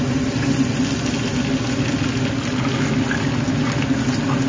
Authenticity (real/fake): real